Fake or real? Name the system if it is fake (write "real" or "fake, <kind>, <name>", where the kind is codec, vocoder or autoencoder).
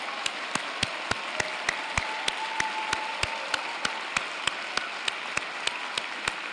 real